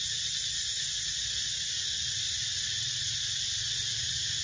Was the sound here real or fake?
real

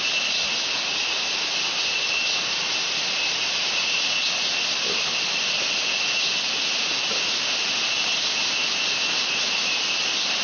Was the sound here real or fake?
real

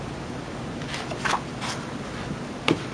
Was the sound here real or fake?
real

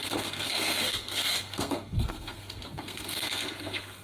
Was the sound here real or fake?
fake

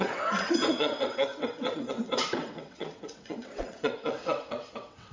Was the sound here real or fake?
fake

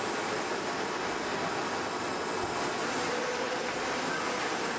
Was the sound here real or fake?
real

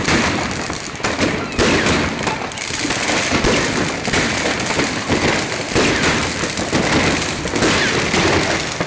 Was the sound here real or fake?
real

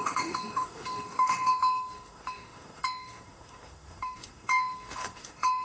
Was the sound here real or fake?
fake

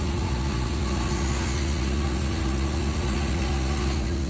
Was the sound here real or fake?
fake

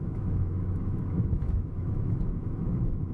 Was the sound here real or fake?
fake